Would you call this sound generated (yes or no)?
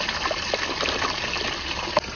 no